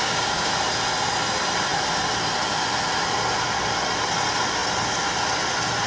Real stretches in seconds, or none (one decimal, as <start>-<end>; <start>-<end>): 0.5-5.9